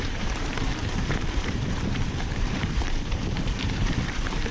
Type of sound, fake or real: fake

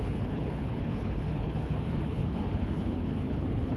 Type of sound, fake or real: fake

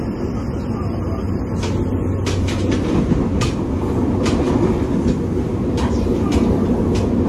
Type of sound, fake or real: real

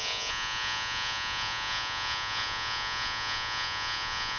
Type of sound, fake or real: fake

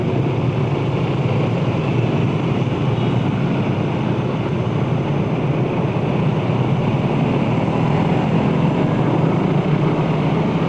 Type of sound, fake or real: real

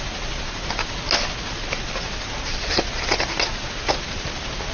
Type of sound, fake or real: real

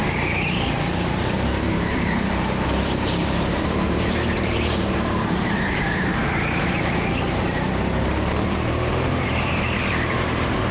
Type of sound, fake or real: fake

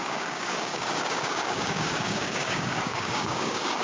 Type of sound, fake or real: fake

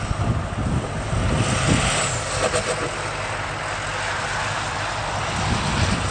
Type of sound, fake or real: real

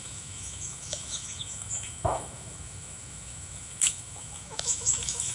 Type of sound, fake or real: fake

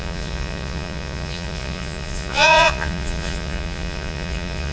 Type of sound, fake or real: fake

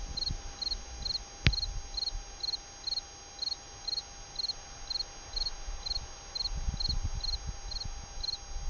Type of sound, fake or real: real